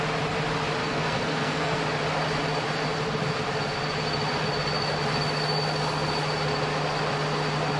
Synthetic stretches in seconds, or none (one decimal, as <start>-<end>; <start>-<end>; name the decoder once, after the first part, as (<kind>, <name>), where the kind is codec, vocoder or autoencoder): 0.8-1.8 (codec, SNAC)